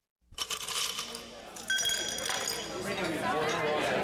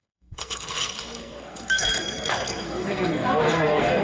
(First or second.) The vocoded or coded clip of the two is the second